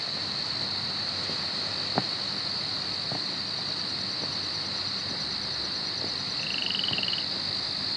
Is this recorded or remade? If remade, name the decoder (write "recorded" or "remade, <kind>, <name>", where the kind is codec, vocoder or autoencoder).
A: recorded